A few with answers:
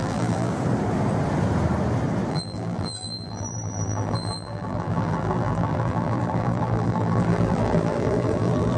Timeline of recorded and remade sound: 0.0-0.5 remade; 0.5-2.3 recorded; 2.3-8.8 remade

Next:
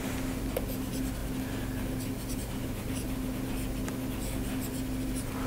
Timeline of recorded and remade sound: 0.0-2.4 recorded; 2.4-3.3 remade; 3.3-5.5 recorded

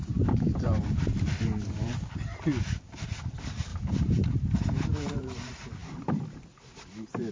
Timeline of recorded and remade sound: 0.0-2.5 remade; 2.5-3.3 recorded; 3.3-7.3 remade

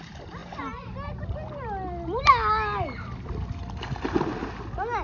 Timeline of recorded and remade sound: 0.0-5.0 recorded

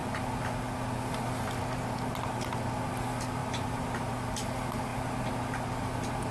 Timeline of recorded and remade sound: 0.0-3.4 recorded; 3.4-4.1 remade; 4.1-6.3 recorded

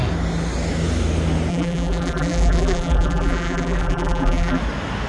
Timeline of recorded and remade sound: 0.0-1.5 recorded; 1.5-4.6 remade; 4.6-5.1 recorded

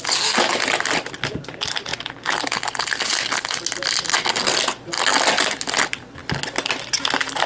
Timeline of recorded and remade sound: 0.0-0.5 recorded; 0.5-1.1 remade; 1.1-7.5 recorded